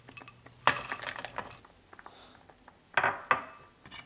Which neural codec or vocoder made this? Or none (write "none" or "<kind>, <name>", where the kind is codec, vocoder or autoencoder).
none